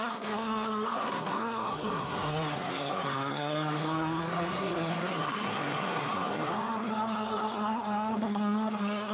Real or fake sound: fake